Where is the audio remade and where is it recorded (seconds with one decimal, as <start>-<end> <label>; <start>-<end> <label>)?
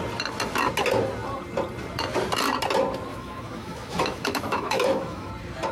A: 0.0-3.1 recorded; 3.1-5.3 remade; 5.3-5.7 recorded